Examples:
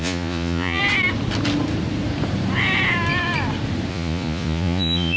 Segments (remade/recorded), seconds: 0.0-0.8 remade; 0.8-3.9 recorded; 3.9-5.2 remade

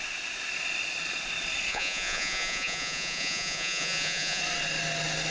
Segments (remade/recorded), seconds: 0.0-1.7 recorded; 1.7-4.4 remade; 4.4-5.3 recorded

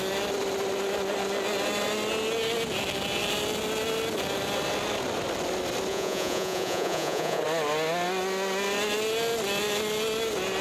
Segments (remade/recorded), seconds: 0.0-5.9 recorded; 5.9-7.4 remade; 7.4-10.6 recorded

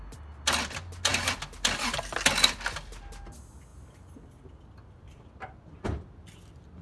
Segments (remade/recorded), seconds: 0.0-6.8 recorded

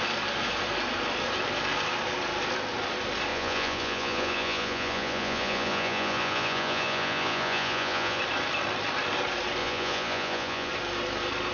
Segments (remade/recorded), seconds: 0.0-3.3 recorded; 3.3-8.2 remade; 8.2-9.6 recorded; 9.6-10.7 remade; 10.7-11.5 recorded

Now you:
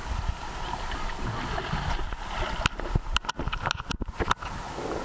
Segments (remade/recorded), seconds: 0.0-5.0 recorded